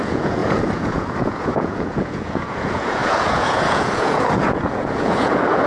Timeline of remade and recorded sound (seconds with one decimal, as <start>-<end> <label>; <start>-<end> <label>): 0.0-5.7 remade